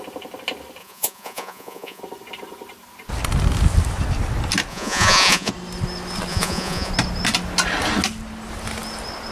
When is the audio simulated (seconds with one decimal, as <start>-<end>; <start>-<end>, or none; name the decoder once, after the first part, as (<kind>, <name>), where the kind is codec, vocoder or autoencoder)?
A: 0.8-2.0 (vocoder, Vocos); 4.7-5.5; 6.3-6.9